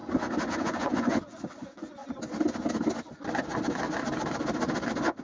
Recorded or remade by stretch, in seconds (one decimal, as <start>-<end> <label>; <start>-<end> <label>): 0.0-0.5 recorded; 0.5-2.0 remade; 2.0-5.2 recorded